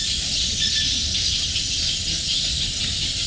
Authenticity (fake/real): real